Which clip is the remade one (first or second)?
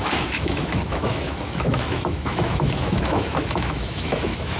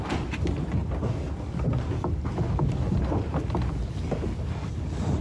first